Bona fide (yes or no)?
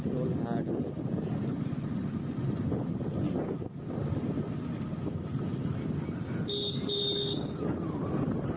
yes